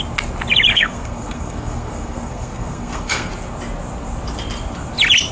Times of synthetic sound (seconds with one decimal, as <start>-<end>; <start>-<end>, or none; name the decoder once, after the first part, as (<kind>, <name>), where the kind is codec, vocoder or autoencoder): 0.7-3.3 (codec, SNAC)